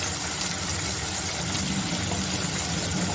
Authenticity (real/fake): real